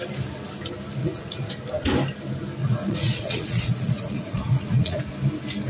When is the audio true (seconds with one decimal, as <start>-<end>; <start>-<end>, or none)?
0.0-1.0; 1.5-2.6; 5.0-5.7